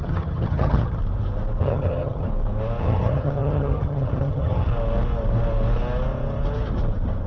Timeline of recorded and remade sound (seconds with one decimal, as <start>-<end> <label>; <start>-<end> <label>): 0.0-1.0 remade; 1.0-1.6 recorded; 1.6-2.3 remade; 2.3-2.8 recorded; 2.8-4.7 remade; 4.7-7.3 recorded